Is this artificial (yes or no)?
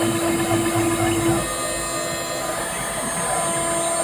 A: no